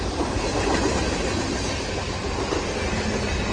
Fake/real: real